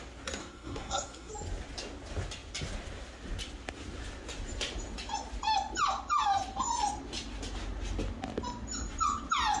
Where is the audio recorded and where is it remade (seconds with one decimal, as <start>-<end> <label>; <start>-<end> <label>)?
0.0-0.4 recorded; 0.4-1.3 remade; 1.3-9.6 recorded